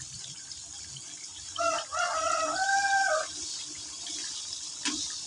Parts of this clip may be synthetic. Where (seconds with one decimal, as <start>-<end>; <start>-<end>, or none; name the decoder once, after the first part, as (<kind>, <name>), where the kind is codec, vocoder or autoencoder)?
0.9-4.1 (vocoder, BigVGAN v2)